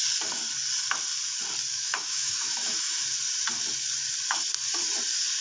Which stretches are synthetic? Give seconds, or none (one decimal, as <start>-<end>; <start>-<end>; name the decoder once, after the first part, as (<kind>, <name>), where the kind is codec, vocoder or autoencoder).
1.7-3.0 (autoencoder, DAC-VAE)